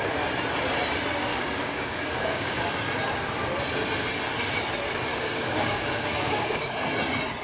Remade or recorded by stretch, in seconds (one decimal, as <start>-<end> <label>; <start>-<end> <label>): 0.0-1.3 recorded; 1.3-2.6 remade; 2.6-5.1 recorded; 5.1-6.8 remade; 6.8-7.4 recorded